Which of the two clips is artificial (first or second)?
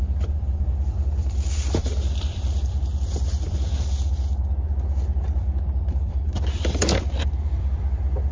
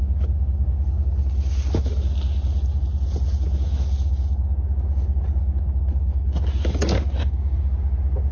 first